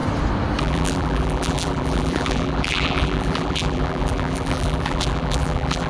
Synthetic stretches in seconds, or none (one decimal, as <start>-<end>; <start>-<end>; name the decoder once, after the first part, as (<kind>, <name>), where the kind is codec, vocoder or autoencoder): 0.6-5.9 (vocoder, BigVGAN v2)